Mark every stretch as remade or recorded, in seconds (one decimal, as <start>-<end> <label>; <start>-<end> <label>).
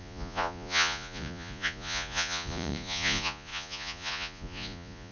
0.0-5.1 remade